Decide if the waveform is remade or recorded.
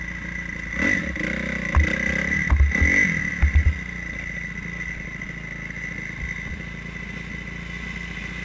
recorded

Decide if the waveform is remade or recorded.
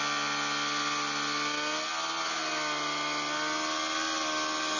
recorded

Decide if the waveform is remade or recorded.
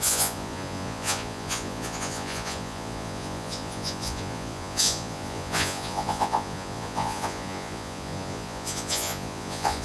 remade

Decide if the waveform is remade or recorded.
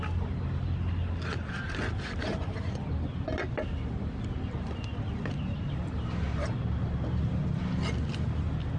recorded